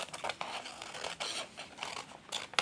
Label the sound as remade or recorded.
recorded